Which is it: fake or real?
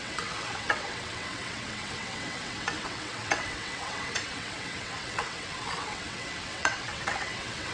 fake